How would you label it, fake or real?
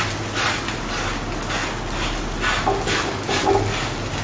real